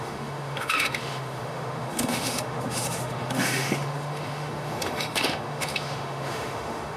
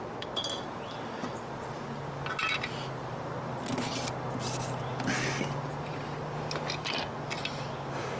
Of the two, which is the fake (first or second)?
first